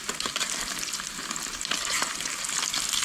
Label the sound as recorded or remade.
recorded